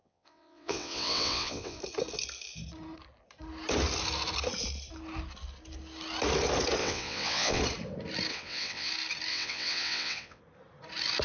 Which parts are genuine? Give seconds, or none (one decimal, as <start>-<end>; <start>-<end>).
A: 1.8-6.8; 7.6-8.3; 8.9-9.3; 10.4-11.2